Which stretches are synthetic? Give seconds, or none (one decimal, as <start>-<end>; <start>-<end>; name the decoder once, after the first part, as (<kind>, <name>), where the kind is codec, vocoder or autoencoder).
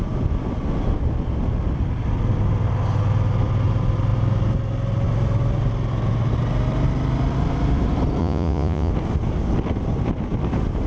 8.2-8.9 (vocoder, Vocos)